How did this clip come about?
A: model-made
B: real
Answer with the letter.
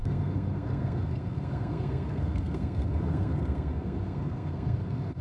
A